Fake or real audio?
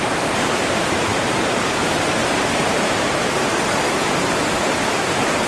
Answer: fake